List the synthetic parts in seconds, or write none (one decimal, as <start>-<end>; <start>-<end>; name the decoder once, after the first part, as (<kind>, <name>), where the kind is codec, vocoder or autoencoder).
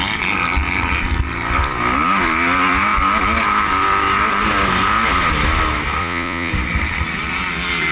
6.0-6.5 (vocoder, Vocos)